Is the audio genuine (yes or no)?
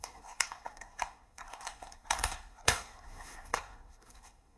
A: no